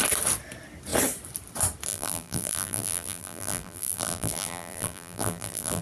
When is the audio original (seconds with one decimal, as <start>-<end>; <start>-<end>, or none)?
0.0-1.9